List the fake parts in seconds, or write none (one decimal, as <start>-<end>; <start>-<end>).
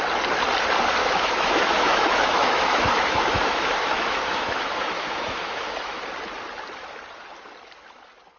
1.0-6.0